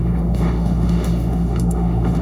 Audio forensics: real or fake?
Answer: fake